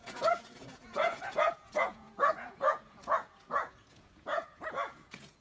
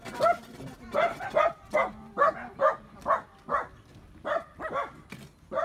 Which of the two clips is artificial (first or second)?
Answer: first